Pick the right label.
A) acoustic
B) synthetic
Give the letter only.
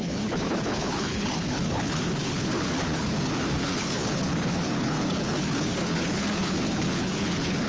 B